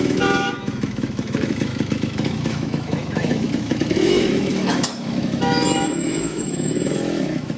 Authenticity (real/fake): fake